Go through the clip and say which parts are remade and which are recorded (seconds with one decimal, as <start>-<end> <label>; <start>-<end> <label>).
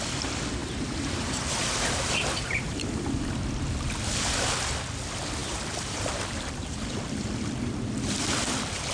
0.0-0.6 recorded; 0.6-2.7 remade; 2.7-5.4 recorded; 5.4-6.4 remade; 6.4-8.9 recorded